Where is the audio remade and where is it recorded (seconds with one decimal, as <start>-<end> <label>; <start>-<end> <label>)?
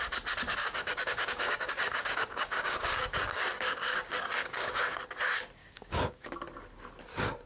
0.0-0.6 recorded; 0.6-5.0 remade; 5.0-5.6 recorded; 5.6-6.3 remade; 6.3-7.5 recorded